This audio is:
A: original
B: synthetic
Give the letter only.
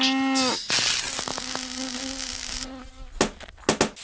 A